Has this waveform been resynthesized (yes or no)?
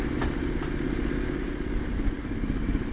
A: no